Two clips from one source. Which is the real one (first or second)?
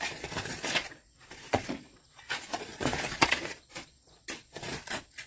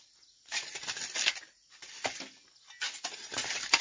second